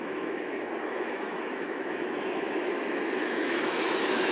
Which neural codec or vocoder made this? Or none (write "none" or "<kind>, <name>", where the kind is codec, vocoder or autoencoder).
autoencoder, DAC-VAE